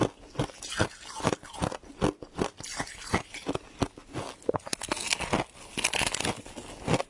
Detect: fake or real real